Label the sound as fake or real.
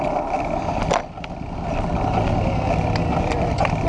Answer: real